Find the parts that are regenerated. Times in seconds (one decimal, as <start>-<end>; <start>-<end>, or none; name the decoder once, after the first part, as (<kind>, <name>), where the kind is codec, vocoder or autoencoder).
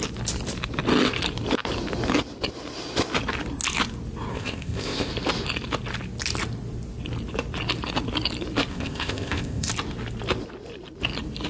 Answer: 4.3-5.1 (codec, ZipCodec); 8.7-9.7